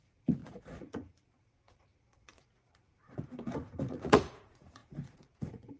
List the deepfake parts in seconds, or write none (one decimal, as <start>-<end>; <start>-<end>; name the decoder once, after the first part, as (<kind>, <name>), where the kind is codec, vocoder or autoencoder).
0.0-5.8 (vocoder, Vocos)